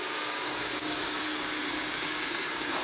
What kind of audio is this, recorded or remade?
remade